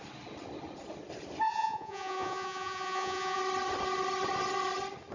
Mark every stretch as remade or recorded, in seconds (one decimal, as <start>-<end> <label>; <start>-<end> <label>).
0.0-1.5 recorded; 1.5-3.4 remade; 3.4-5.1 recorded

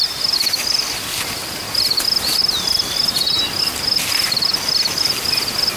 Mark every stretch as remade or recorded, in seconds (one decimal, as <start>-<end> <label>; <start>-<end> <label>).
0.0-5.8 recorded

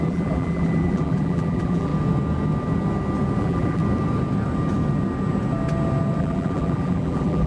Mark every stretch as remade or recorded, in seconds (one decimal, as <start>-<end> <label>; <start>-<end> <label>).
0.0-1.9 remade; 1.9-3.4 recorded; 3.4-3.8 remade; 3.8-6.2 recorded; 6.2-7.5 remade

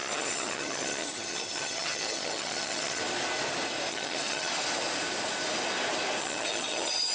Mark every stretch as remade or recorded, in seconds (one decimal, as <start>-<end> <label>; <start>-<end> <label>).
0.0-3.0 remade; 3.0-3.9 recorded; 3.9-4.5 remade; 4.5-6.2 recorded; 6.2-7.1 remade

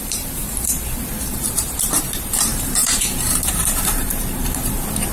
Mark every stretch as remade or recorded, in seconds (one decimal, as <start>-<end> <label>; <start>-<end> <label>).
0.0-5.1 remade